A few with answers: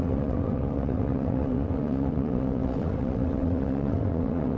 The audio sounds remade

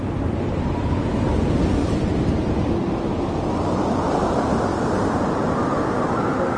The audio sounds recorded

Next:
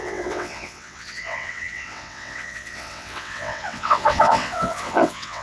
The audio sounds remade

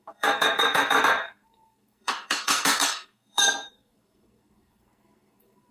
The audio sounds remade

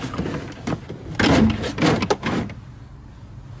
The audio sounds recorded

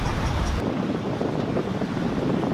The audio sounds recorded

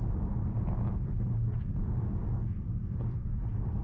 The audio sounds remade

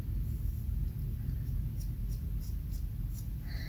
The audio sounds recorded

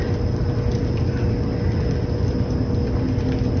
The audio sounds recorded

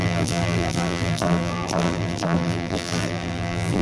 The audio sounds remade